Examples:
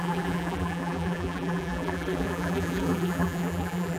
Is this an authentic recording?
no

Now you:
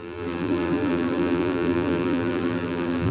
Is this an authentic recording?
no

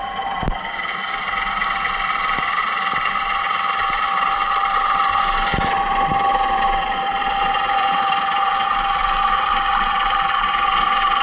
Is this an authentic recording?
no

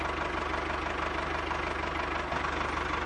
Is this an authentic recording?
yes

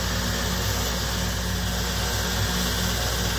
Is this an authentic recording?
yes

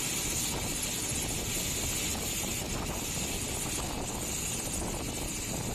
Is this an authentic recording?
yes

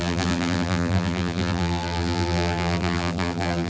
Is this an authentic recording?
no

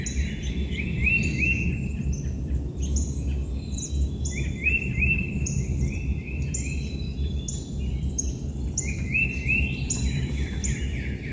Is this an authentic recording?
no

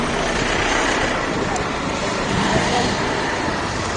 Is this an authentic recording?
no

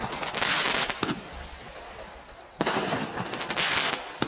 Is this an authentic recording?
yes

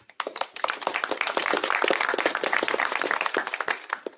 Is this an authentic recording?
no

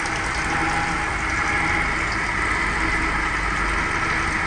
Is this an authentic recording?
yes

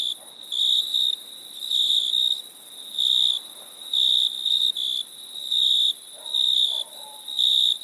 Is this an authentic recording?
yes